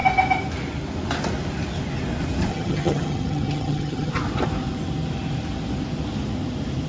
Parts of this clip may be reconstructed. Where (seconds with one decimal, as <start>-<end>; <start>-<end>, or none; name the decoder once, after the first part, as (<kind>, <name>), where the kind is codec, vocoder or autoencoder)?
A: 2.5-4.1 (vocoder, HiFi-GAN)